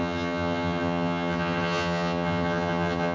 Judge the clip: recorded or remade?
remade